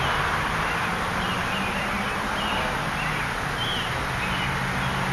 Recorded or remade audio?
recorded